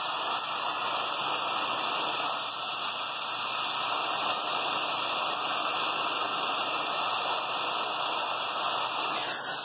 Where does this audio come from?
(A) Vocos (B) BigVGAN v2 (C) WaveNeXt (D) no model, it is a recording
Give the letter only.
D